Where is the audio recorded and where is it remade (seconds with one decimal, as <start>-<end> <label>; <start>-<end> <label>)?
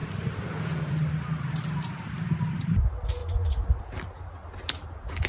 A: 0.0-5.3 recorded